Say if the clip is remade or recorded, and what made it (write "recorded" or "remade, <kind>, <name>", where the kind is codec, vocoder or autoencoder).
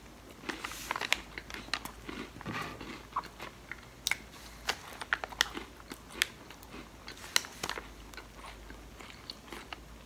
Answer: recorded